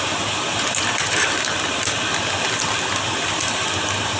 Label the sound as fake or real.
real